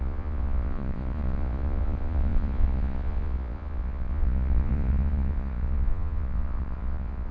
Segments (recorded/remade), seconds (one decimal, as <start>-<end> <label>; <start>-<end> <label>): 0.0-7.3 remade